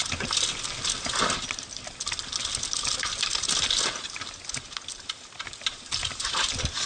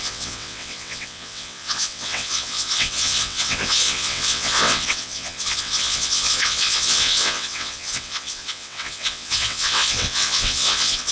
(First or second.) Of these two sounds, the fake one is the second